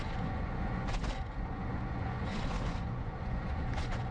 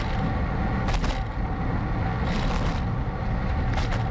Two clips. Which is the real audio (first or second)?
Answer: second